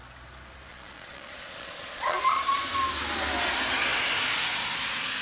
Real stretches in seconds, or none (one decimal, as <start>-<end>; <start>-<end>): 0.0-0.7; 2.6-5.2